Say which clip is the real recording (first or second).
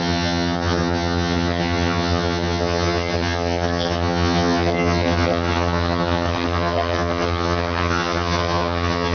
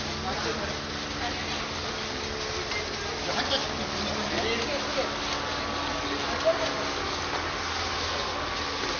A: second